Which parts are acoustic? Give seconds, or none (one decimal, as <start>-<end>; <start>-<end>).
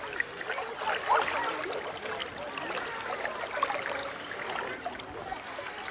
0.0-5.9